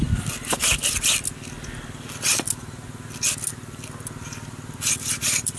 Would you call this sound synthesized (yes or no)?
no